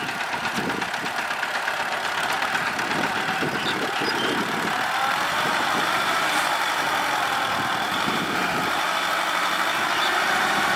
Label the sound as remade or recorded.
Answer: remade